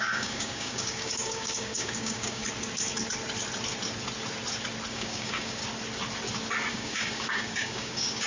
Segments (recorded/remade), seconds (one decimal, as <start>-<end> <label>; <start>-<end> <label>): 0.0-2.4 remade; 2.4-4.9 recorded; 4.9-5.6 remade; 5.6-6.7 recorded; 6.7-8.3 remade